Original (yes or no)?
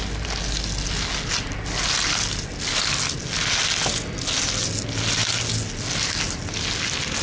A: yes